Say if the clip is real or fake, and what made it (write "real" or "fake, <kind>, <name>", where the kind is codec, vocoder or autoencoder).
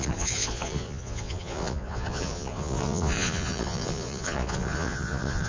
fake, vocoder, Vocos